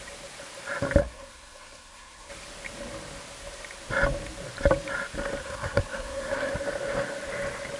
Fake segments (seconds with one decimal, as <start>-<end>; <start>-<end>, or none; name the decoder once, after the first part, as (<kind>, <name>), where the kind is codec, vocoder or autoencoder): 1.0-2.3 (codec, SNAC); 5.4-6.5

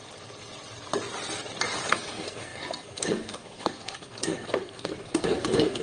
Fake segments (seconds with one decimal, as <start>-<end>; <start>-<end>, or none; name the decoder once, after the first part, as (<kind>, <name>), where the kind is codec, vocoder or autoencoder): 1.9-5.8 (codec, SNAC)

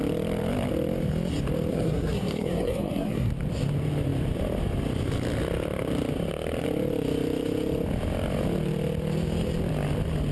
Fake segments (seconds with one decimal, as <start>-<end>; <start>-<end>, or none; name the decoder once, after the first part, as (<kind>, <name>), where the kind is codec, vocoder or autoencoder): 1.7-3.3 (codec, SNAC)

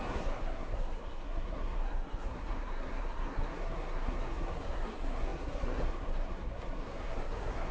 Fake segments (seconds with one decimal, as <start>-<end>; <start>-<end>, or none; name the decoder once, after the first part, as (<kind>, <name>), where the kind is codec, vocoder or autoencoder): 0.0-7.7 (codec, SNAC)